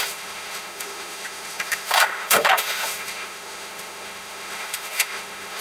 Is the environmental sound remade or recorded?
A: remade